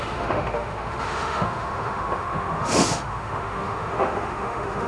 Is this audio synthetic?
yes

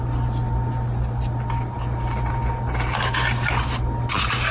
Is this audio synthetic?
no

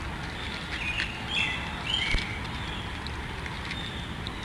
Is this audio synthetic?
no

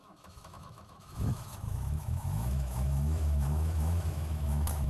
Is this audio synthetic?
yes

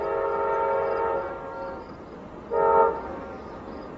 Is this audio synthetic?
no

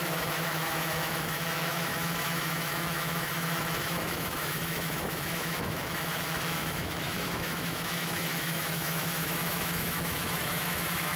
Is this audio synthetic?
yes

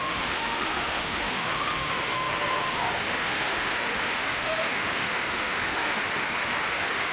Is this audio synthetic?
yes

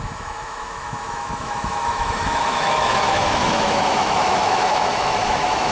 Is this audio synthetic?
yes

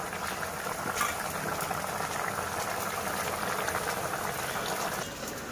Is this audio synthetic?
no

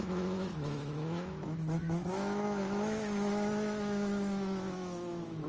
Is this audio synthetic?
yes